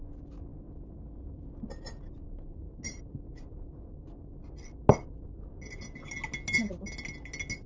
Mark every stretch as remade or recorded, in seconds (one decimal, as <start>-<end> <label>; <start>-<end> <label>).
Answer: 0.0-7.7 recorded